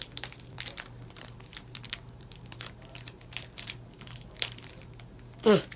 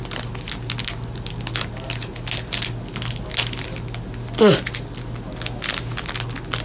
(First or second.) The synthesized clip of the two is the first